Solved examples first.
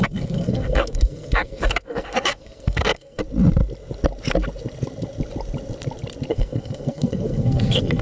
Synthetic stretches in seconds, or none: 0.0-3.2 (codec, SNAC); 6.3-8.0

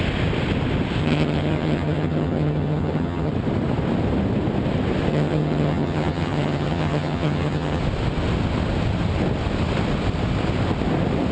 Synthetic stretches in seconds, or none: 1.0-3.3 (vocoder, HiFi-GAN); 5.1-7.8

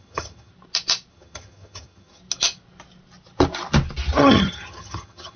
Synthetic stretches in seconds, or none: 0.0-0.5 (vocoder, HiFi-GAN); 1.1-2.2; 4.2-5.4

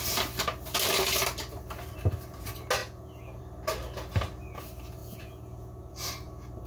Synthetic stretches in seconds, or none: 2.8-3.4 (vocoder, Vocos); 5.0-5.9

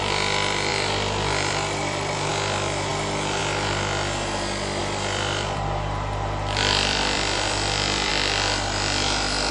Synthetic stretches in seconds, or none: 0.7-2.3 (vocoder, BigVGAN v2); 4.8-8.1